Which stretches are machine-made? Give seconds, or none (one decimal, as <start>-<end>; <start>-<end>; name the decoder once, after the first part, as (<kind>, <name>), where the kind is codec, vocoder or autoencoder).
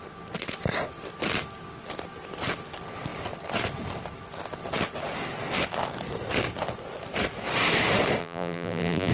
8.2-9.1 (vocoder, BigVGAN v2)